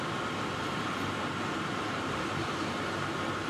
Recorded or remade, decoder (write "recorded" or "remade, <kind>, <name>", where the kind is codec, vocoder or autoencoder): remade, vocoder, BigVGAN v2